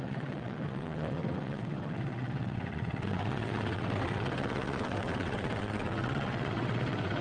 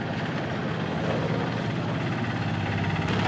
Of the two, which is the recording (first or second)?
second